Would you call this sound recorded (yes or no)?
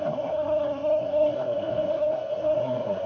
no